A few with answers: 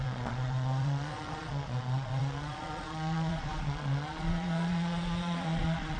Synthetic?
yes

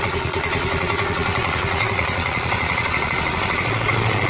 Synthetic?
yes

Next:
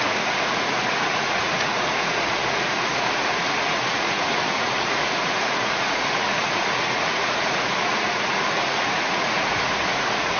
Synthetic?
yes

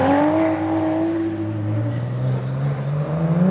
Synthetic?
no